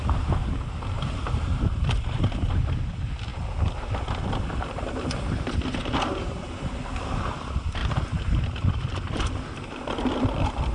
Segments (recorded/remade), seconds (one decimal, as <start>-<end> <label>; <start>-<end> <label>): 0.0-0.4 remade; 0.4-1.1 recorded; 1.1-10.7 remade